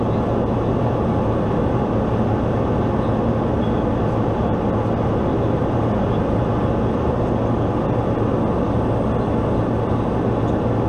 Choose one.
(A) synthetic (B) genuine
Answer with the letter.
B